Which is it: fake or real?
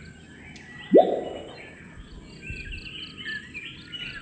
real